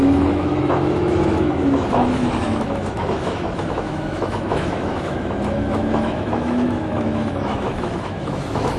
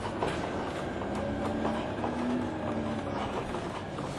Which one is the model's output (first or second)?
first